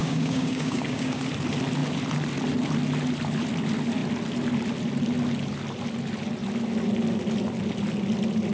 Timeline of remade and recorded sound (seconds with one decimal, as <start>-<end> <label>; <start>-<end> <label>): 0.0-1.2 remade; 1.2-8.5 recorded